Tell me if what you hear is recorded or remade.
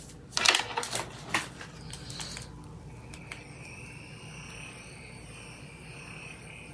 recorded